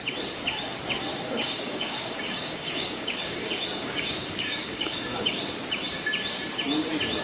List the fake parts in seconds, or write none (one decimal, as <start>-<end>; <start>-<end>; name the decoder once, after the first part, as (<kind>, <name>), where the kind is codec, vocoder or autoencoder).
1.1-5.4 (codec, DAC)